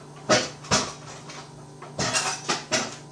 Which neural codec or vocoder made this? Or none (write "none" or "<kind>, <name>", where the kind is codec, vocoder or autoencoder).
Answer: none